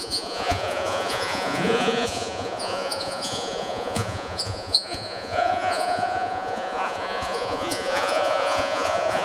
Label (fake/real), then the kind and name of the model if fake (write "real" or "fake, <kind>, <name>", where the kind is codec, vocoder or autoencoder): fake, vocoder, Vocos